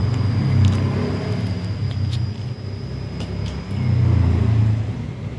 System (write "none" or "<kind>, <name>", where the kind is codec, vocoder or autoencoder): none